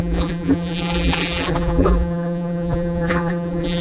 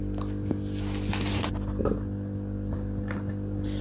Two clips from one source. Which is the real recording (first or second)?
second